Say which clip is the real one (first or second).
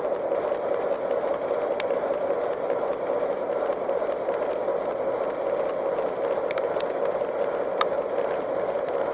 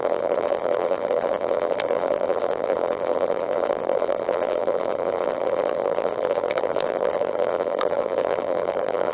first